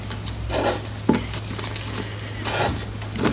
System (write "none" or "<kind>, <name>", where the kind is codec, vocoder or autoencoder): none